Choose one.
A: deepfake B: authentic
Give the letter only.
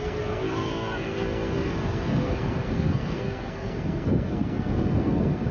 A